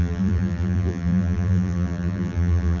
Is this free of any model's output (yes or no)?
no